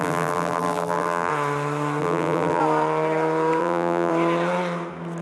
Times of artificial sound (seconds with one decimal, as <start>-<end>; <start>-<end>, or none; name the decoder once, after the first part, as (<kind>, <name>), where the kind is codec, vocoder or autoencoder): 0.0-1.3 (vocoder, BigVGAN v2); 2.0-2.6; 3.6-4.1